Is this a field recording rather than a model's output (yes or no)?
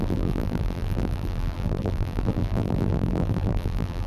no